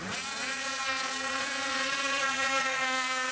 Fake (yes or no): yes